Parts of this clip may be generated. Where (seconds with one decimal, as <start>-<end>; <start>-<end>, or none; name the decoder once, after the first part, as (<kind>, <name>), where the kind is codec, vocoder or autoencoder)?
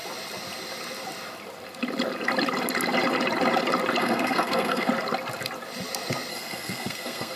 4.0-4.9 (codec, SNAC); 6.3-7.4